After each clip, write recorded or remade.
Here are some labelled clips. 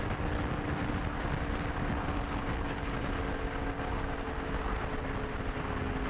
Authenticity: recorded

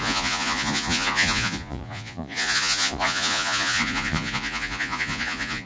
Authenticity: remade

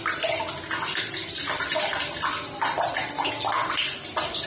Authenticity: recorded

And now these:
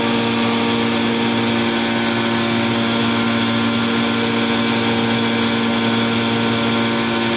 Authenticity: recorded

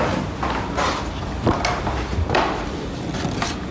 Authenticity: recorded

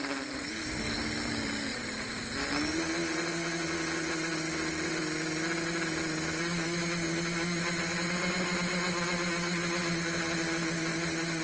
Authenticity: recorded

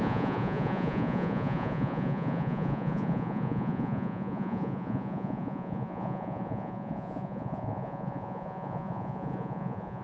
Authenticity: remade